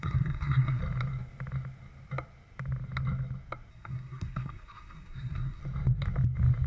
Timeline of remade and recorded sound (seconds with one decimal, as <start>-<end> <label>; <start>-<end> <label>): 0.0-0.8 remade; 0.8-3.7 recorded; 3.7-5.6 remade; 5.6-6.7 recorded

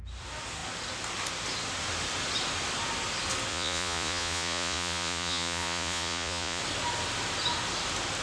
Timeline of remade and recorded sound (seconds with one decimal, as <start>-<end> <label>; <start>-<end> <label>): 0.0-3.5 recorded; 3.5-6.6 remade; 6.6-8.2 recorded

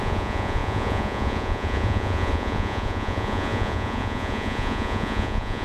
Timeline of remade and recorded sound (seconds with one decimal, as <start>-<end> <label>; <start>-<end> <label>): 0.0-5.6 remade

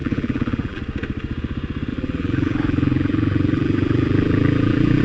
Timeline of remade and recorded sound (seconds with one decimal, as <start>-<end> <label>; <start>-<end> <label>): 0.0-0.8 remade; 0.8-1.9 recorded; 1.9-5.0 remade

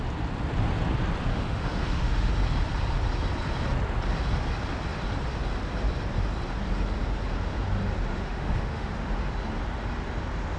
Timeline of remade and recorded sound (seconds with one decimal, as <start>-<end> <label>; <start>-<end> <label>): 0.0-1.3 recorded; 1.3-2.3 remade; 2.3-8.1 recorded; 8.1-8.9 remade; 8.9-10.6 recorded

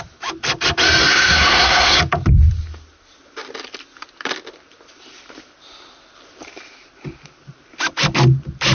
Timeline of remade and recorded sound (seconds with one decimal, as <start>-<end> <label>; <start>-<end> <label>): 0.0-1.0 recorded; 1.0-2.0 remade; 2.0-8.7 recorded

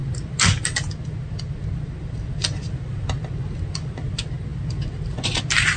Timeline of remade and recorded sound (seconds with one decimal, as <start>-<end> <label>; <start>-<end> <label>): 0.0-5.8 recorded

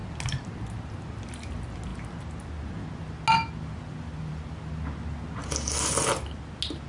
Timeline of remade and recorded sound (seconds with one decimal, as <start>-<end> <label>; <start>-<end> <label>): 0.0-6.9 recorded